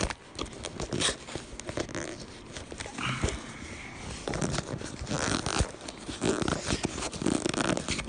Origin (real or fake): real